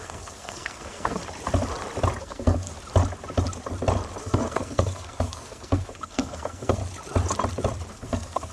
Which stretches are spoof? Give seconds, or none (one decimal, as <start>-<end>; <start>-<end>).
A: 0.0-1.2; 2.2-2.7; 4.2-6.8; 7.9-8.5